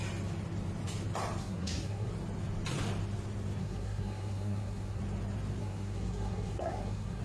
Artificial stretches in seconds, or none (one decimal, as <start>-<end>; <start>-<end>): 1.4-2.1; 3.6-5.0; 5.6-7.2